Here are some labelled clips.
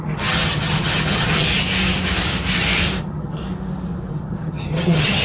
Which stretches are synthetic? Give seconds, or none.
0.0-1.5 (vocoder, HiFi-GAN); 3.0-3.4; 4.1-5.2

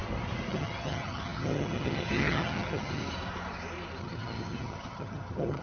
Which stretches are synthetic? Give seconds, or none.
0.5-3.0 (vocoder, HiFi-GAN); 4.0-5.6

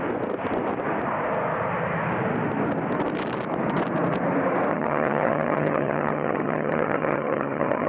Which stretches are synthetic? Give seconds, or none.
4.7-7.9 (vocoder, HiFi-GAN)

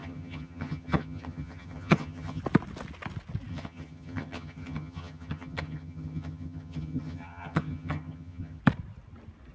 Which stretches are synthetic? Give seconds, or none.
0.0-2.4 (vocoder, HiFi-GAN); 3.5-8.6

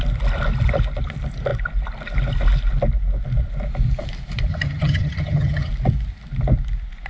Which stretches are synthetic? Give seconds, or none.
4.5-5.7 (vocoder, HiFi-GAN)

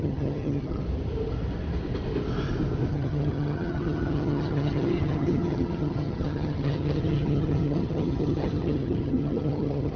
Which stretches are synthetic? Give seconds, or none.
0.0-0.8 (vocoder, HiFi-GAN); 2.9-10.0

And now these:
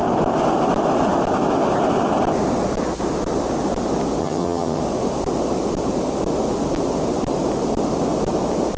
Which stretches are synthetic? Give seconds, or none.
4.2-4.8 (vocoder, HiFi-GAN)

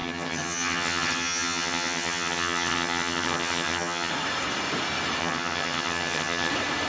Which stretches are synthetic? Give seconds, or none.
0.0-4.1 (vocoder, HiFi-GAN); 5.2-6.5